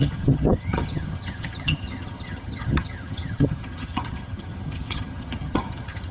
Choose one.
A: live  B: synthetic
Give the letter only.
B